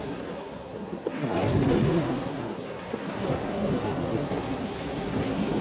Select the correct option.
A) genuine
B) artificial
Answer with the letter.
B